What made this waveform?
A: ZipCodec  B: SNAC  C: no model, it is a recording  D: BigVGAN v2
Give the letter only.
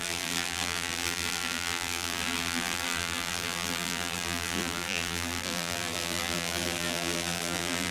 D